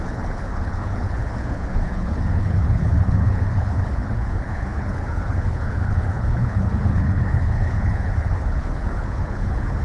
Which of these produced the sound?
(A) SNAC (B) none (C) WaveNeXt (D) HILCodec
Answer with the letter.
D